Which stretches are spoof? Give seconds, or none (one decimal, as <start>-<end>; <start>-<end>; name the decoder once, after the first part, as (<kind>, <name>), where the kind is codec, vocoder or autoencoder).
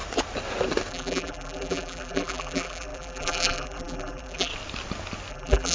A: 0.9-4.5 (vocoder, BigVGAN v2); 5.3-5.7